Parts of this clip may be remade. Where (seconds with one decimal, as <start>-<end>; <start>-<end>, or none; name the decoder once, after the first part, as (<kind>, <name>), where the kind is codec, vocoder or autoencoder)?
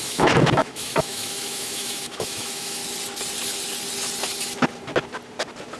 0.0-2.8 (autoencoder, DAC-VAE)